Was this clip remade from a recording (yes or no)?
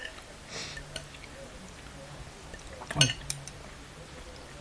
no